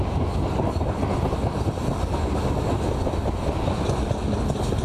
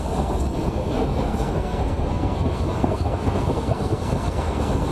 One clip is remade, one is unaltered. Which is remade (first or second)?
second